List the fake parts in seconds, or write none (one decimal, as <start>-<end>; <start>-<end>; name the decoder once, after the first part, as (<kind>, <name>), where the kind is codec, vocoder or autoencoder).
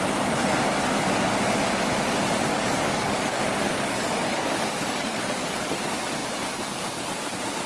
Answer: 2.5-5.6 (codec, DAC)